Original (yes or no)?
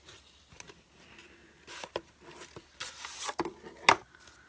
yes